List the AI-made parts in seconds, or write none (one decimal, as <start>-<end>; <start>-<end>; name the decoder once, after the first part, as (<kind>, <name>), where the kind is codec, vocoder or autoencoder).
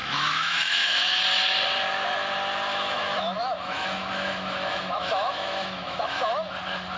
0.0-1.2 (autoencoder, DAC-VAE); 2.7-6.3